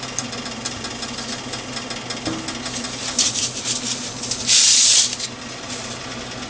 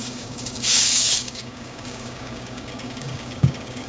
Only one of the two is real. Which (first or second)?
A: first